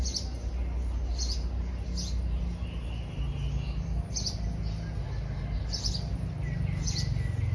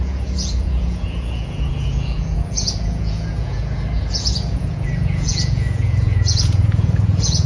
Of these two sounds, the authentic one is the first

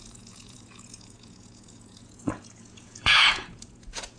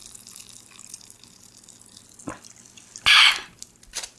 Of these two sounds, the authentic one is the second